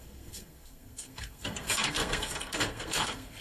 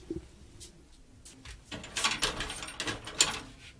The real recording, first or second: second